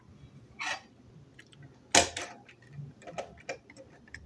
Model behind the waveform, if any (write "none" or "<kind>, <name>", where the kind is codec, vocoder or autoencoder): none